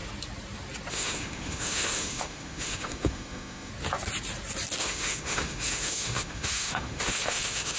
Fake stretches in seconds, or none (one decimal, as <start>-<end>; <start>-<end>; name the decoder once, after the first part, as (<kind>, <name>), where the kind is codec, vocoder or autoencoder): 0.9-3.7 (autoencoder, DAC-VAE); 4.8-7.8

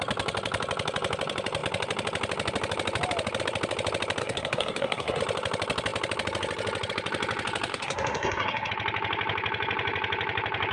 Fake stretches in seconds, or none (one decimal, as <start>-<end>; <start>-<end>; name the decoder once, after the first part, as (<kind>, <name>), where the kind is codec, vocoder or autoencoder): 4.2-5.2 (codec, SNAC); 7.7-8.7

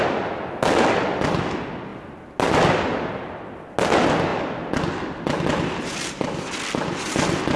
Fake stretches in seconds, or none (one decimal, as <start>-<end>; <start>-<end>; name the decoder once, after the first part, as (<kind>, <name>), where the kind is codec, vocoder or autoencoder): none

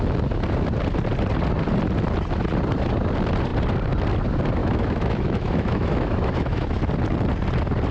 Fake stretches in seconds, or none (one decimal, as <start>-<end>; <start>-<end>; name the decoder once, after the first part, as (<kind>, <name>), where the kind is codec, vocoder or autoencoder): 4.6-6.8 (autoencoder, DAC-VAE)

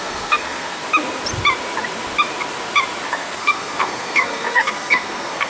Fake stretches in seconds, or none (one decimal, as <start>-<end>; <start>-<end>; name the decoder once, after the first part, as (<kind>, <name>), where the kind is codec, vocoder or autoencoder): 0.0-0.8 (codec, SNAC); 3.1-5.5

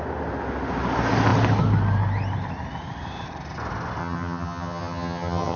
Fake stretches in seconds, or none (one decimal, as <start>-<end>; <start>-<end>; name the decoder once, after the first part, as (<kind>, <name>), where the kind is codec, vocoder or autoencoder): 4.0-5.6 (vocoder, HiFi-GAN)

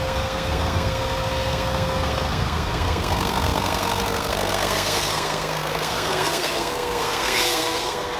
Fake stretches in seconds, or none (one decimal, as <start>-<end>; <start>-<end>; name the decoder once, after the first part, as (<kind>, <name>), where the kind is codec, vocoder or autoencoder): 0.0-8.2 (codec, SNAC)